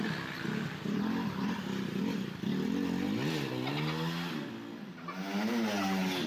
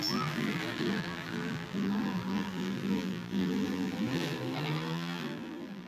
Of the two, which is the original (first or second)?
first